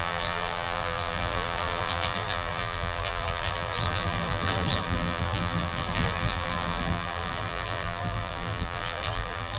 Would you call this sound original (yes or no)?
no